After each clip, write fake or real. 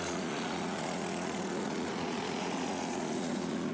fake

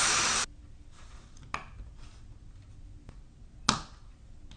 real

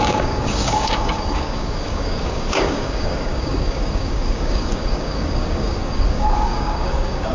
fake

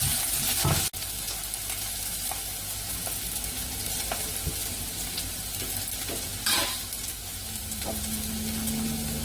real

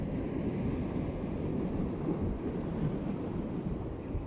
real